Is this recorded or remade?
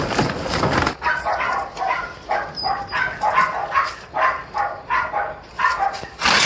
recorded